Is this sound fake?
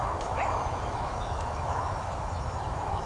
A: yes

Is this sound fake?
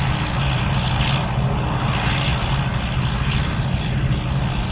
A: no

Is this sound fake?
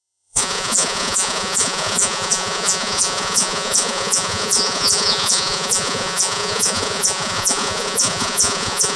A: yes